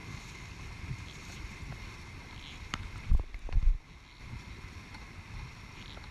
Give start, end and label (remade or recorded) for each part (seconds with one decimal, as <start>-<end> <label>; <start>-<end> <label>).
0.0-6.1 recorded